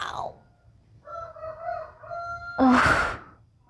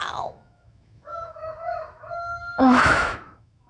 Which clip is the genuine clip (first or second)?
first